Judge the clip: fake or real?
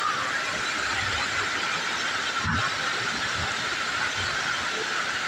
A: real